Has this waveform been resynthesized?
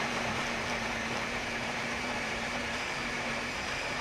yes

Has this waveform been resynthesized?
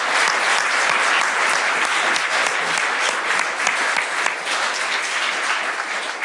no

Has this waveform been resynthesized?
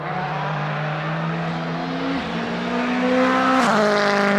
no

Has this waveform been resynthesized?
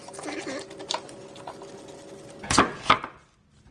yes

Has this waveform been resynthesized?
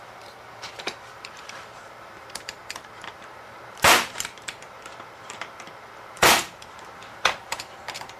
yes